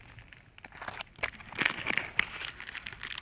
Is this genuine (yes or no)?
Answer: yes